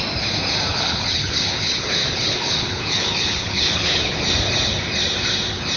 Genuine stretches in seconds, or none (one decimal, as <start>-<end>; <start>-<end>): 0.0-0.7; 4.2-5.8